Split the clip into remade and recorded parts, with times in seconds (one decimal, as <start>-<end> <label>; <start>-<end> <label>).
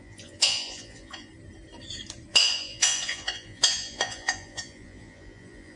0.0-1.3 remade; 1.3-2.3 recorded; 2.3-5.8 remade